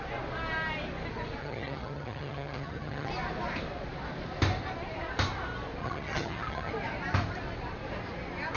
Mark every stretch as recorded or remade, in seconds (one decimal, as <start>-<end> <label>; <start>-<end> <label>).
0.0-1.4 recorded; 1.4-3.1 remade; 3.1-5.8 recorded; 5.8-6.7 remade; 6.7-8.6 recorded